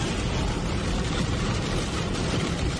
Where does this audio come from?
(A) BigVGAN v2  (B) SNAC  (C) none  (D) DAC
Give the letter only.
C